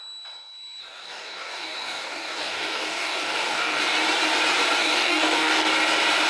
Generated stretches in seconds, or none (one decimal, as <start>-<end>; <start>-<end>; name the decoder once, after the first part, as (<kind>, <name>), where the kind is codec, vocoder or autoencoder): 0.8-3.8 (codec, DAC); 4.8-5.7